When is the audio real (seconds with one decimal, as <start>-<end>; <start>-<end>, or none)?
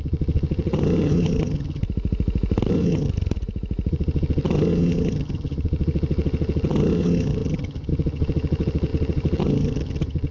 1.8-2.7; 3.1-3.9